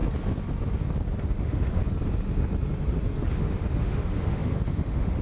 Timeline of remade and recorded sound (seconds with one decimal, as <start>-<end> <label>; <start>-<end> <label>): 0.0-1.2 recorded; 1.2-1.8 remade; 1.8-3.3 recorded; 3.3-5.2 remade